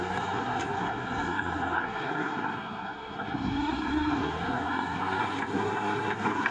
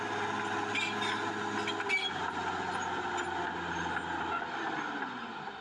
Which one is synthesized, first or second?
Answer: first